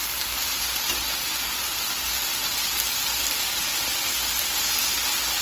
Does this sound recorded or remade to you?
recorded